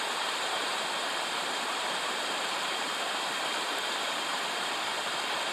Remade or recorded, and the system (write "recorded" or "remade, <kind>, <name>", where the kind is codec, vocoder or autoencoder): remade, vocoder, BigVGAN v2